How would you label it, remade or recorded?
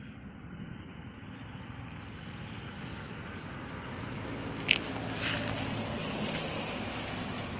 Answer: recorded